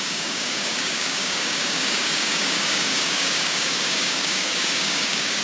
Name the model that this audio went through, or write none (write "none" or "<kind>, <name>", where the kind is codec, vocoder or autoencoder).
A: codec, DAC